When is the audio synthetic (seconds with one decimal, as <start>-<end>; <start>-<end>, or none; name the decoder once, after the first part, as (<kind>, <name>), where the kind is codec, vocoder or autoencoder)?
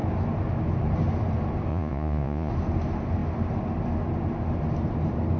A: 1.7-2.5 (vocoder, Vocos)